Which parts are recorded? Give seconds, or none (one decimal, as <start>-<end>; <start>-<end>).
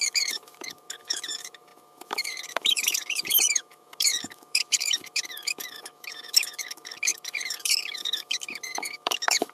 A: none